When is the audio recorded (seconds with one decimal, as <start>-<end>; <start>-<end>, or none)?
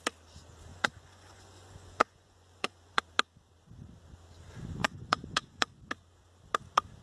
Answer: 0.0-0.7; 3.0-4.8; 5.8-7.0